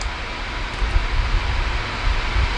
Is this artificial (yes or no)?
no